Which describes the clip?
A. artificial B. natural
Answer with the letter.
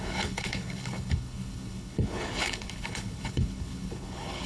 A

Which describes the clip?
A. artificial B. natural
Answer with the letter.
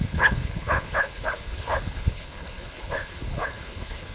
A